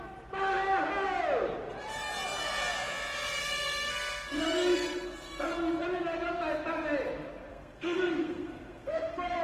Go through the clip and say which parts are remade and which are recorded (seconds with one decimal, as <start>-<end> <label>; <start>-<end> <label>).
0.0-3.4 recorded; 3.4-5.5 remade; 5.5-7.5 recorded; 7.5-9.4 remade